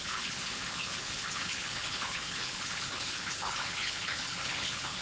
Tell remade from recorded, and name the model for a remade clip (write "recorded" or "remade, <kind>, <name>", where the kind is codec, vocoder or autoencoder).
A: remade, codec, HILCodec